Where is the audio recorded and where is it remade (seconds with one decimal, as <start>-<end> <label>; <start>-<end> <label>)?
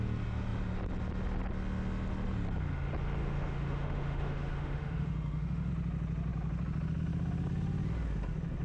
0.0-3.2 recorded; 3.2-5.7 remade; 5.7-8.6 recorded